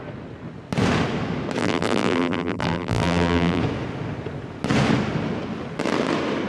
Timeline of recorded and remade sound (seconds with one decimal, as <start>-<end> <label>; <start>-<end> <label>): 0.0-1.6 recorded; 1.6-3.6 remade; 3.6-6.5 recorded